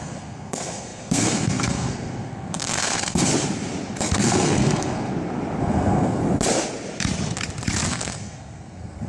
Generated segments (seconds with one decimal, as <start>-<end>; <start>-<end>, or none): 0.0-3.3; 4.0-5.1; 5.6-6.2; 7.9-9.1